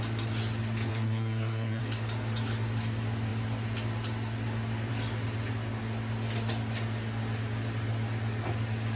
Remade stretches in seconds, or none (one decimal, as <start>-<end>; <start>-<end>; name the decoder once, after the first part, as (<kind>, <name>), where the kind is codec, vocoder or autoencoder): 0.9-1.8 (codec, SNAC)